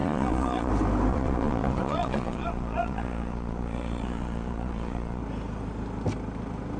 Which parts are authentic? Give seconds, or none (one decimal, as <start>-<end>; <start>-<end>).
0.7-1.1; 5.2-6.8